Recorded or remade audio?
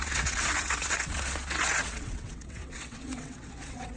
remade